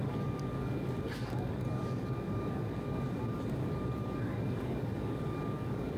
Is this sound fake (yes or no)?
yes